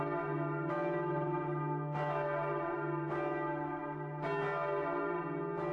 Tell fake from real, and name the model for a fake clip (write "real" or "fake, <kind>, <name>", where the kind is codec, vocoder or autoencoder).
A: real